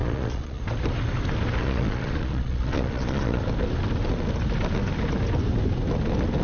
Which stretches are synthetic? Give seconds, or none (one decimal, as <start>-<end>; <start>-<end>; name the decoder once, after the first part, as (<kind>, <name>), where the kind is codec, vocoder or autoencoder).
0.0-0.6 (vocoder, Vocos); 1.6-3.4